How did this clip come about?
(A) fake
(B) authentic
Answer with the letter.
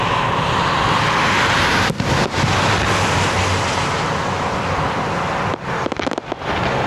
B